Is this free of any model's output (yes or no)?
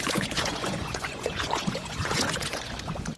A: no